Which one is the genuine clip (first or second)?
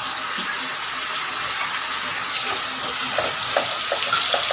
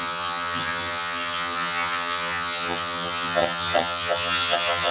first